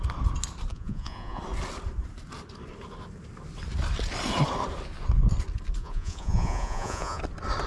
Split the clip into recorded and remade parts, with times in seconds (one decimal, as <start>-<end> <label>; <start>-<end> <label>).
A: 0.0-0.7 recorded; 0.7-1.4 remade; 1.4-5.8 recorded; 5.8-7.2 remade; 7.2-7.7 recorded